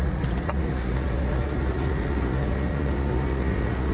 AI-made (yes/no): yes